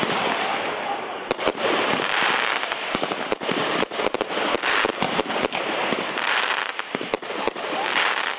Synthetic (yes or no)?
no